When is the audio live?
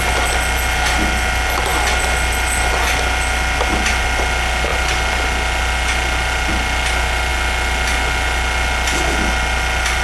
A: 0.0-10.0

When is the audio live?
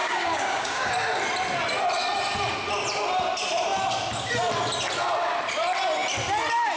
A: 0.9-6.8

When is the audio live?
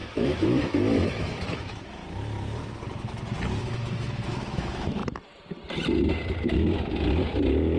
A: 2.0-3.6; 5.0-7.8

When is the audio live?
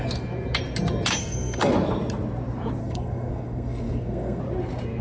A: 0.0-1.2; 1.7-2.8; 4.4-5.0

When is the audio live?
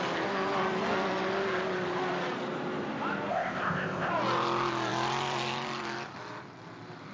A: 0.0-3.3; 4.1-7.1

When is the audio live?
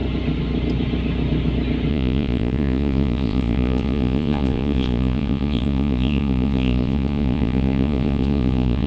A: 0.0-1.9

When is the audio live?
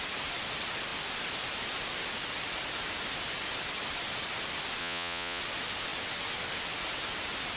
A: 0.0-4.8; 5.4-7.6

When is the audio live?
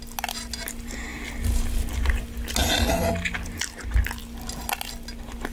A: 0.0-5.5